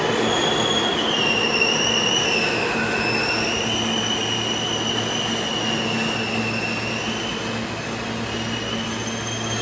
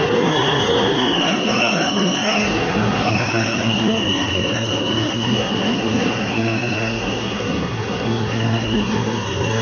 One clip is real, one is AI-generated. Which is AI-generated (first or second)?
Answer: second